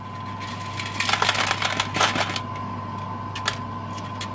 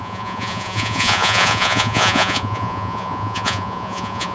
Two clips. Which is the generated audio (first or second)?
second